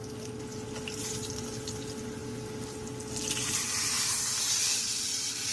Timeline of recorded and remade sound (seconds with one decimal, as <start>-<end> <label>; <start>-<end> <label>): 0.0-5.5 recorded